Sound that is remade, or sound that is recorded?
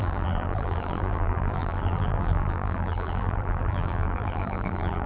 remade